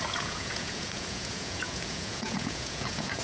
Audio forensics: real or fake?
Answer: fake